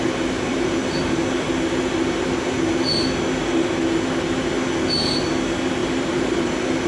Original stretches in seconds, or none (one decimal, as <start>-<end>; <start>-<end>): 0.0-0.5; 1.2-5.8; 6.5-6.9

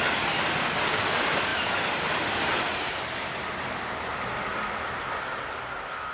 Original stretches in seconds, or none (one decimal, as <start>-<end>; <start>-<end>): 0.0-1.5; 5.2-6.1

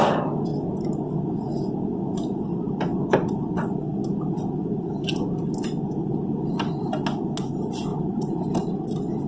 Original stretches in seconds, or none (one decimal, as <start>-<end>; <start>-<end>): 0.0-7.9; 8.9-9.3

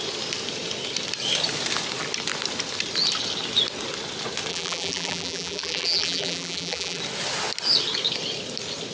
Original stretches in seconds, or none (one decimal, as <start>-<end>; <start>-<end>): 0.0-4.5; 7.0-8.9

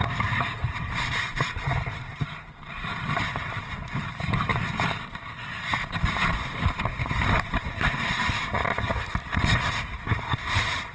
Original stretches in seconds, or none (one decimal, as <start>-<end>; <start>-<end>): 2.9-3.6; 4.5-9.6

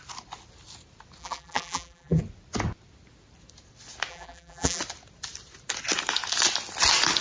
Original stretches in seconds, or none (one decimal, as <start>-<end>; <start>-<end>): 0.0-1.2; 2.2-4.1; 4.8-7.2

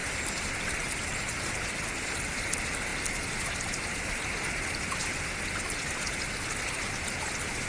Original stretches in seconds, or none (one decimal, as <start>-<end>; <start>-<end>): 0.6-7.7